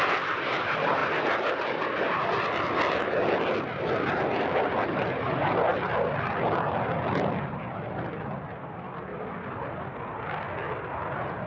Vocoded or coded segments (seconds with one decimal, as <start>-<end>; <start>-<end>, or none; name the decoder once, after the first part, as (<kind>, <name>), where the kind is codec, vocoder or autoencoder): none